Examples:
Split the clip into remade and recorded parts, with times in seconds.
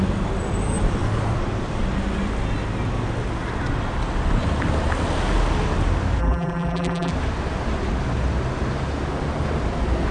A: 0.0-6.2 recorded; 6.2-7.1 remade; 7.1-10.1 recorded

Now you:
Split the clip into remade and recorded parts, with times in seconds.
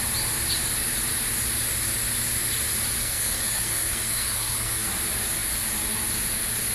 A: 0.0-3.0 recorded; 3.0-4.9 remade; 4.9-6.7 recorded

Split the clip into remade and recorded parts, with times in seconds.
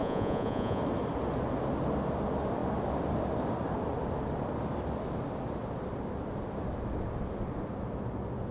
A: 0.0-0.8 remade; 0.8-8.5 recorded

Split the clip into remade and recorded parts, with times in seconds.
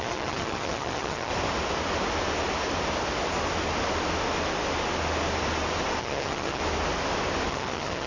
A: 0.0-1.3 remade; 1.3-6.0 recorded; 6.0-6.6 remade; 6.6-7.5 recorded; 7.5-8.1 remade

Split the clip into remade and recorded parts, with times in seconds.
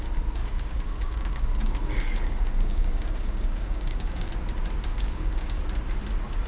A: 0.0-0.4 recorded; 0.4-4.3 remade; 4.3-4.9 recorded; 4.9-5.6 remade; 5.6-6.5 recorded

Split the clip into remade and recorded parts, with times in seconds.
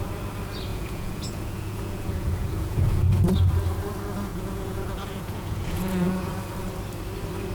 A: 0.0-0.7 recorded; 0.7-3.4 remade; 3.4-4.3 recorded; 4.3-6.3 remade; 6.3-7.5 recorded